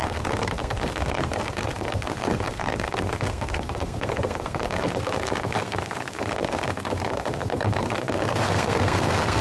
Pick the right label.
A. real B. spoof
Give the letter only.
B